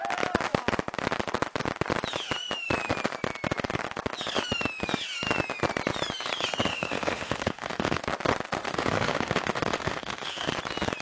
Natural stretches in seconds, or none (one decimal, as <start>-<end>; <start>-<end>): 0.0-6.7; 8.0-8.6; 10.5-11.0